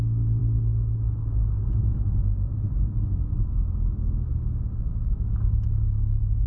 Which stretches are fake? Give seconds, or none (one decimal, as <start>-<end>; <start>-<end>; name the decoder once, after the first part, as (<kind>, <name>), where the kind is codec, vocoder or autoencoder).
0.0-2.5 (autoencoder, DAC-VAE); 3.1-4.3; 4.9-6.5